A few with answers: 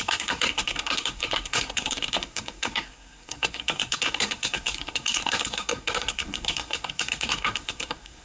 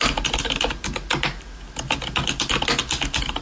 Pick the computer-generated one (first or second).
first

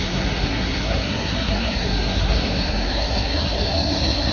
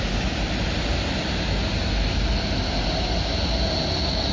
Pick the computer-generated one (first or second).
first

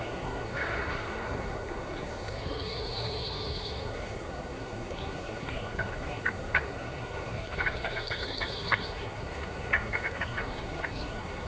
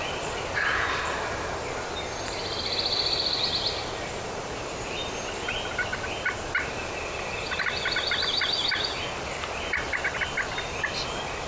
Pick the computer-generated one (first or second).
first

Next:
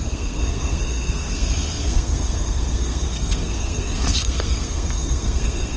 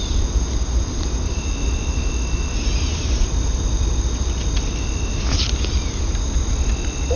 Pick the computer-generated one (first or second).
first